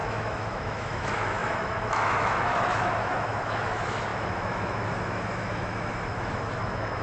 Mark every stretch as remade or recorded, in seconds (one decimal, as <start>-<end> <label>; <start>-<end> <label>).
0.0-7.0 remade